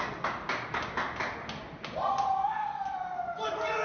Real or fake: real